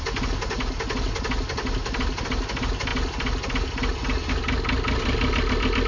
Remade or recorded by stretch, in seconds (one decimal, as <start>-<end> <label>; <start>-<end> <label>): 0.0-5.9 recorded